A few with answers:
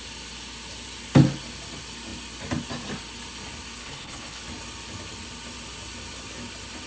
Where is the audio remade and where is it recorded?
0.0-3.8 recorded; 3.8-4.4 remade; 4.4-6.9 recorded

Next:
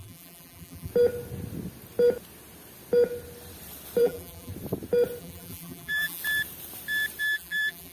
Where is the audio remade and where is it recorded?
0.0-0.9 remade; 0.9-4.0 recorded; 4.0-4.5 remade; 4.5-5.2 recorded; 5.2-6.2 remade; 6.2-7.2 recorded; 7.2-7.9 remade

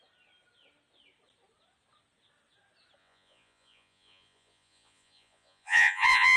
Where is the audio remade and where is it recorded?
0.0-3.0 recorded; 3.0-6.4 remade

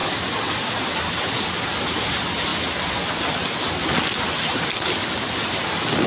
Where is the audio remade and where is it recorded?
0.0-6.1 recorded